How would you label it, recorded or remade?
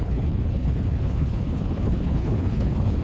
remade